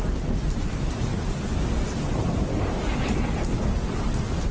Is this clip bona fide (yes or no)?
yes